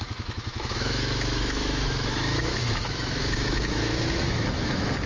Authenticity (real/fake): fake